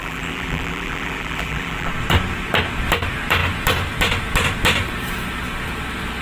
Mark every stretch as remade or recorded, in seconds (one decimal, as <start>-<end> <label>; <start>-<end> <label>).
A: 0.0-1.9 remade; 1.9-6.2 recorded